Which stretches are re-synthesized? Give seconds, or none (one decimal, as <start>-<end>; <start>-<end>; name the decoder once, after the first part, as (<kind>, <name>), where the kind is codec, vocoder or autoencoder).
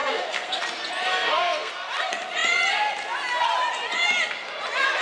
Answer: 0.0-0.6 (codec, SNAC); 1.1-1.7